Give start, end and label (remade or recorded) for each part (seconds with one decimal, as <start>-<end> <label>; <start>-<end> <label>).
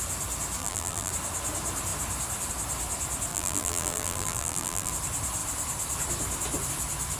0.0-0.6 recorded; 0.6-1.1 remade; 1.1-3.3 recorded; 3.3-4.9 remade; 4.9-7.2 recorded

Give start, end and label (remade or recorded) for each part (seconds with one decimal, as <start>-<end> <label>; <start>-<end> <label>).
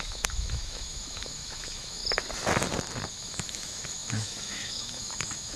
0.0-2.0 remade; 2.0-3.1 recorded; 3.1-5.6 remade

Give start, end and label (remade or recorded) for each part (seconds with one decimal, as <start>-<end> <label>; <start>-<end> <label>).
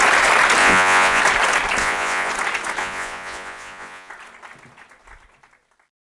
0.0-0.6 recorded; 0.6-1.2 remade; 1.2-1.8 recorded; 1.8-2.3 remade; 2.3-2.8 recorded; 2.8-4.1 remade; 4.1-6.1 recorded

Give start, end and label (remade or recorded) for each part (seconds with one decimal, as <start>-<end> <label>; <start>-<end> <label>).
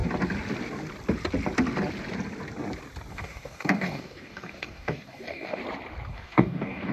0.0-3.1 recorded; 3.1-5.6 remade; 5.6-6.1 recorded; 6.1-6.9 remade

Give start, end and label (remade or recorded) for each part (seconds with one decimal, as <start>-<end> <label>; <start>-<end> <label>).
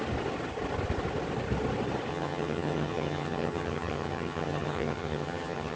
0.0-2.1 recorded; 2.1-5.8 remade